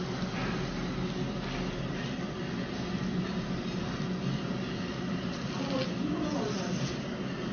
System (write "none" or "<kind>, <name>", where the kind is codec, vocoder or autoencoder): none